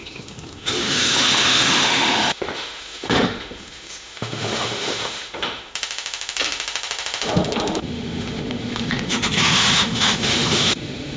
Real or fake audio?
fake